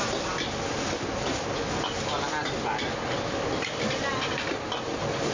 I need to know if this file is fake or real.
real